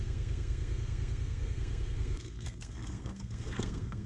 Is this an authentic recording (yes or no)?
no